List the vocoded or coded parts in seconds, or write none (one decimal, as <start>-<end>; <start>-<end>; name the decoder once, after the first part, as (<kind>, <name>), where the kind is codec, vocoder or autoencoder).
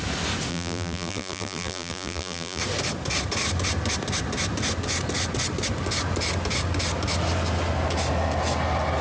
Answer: 0.5-2.6 (vocoder, BigVGAN v2)